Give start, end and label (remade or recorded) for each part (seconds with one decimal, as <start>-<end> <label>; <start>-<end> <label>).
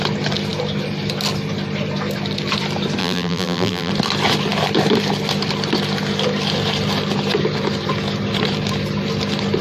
0.0-3.0 recorded; 3.0-3.9 remade; 3.9-9.6 recorded